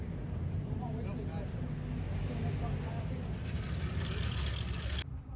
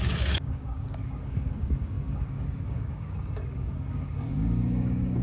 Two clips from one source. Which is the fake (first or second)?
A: second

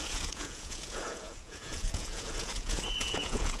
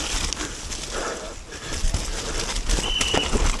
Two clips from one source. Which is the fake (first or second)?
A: first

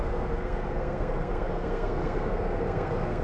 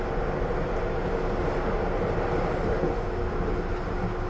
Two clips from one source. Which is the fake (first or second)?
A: first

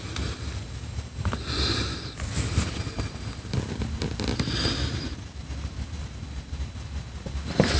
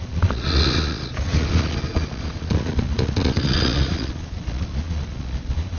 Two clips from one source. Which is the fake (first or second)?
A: second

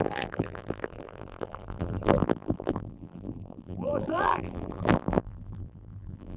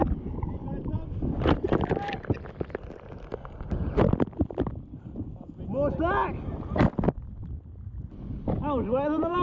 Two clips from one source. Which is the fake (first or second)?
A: first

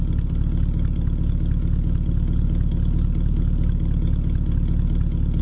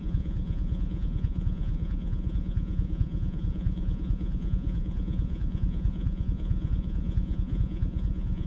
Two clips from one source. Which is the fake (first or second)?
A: second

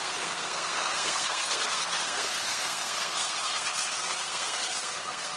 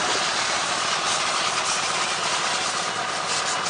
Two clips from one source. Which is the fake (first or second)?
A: first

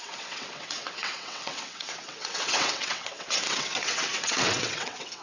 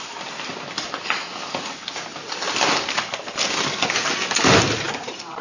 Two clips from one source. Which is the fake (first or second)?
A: first